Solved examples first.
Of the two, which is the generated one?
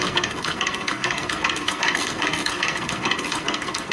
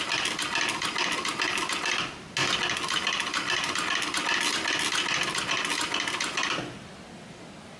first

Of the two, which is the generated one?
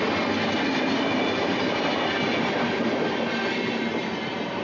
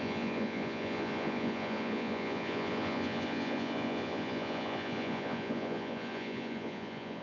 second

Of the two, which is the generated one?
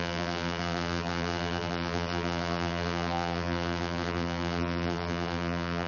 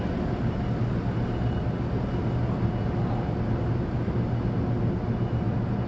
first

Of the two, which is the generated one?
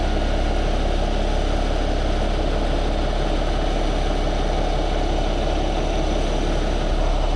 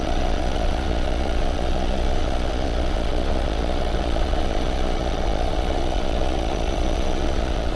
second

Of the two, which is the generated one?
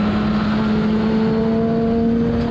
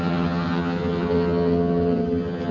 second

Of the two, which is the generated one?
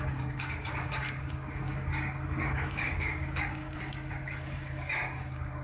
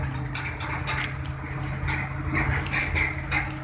first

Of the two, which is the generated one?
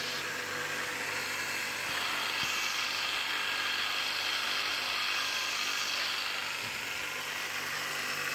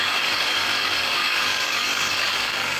second